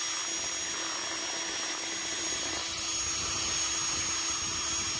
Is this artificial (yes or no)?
no